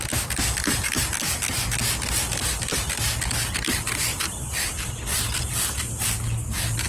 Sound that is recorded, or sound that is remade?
recorded